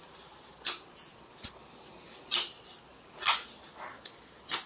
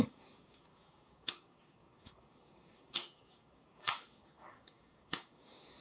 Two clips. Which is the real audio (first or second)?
first